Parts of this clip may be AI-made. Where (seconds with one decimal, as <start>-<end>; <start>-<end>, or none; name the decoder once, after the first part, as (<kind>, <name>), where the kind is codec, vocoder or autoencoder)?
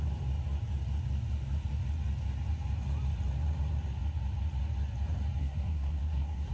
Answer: 5.4-6.5 (codec, SNAC)